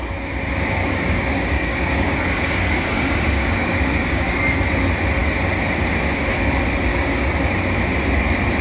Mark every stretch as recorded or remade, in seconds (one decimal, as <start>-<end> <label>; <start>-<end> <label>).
0.0-0.8 recorded; 0.8-4.4 remade; 4.4-6.9 recorded; 6.9-7.5 remade; 7.5-8.6 recorded